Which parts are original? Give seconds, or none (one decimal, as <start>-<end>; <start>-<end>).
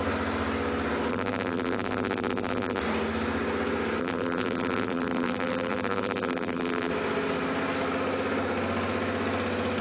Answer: 0.0-1.1; 2.8-4.0; 6.9-9.8